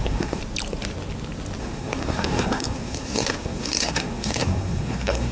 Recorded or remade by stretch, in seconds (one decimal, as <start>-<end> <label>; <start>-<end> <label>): 0.0-0.4 remade; 0.4-1.6 recorded; 1.6-5.3 remade